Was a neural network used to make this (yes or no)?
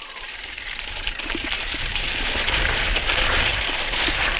yes